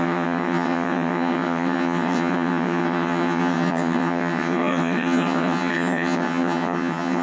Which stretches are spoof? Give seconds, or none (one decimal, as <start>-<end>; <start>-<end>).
0.0-7.2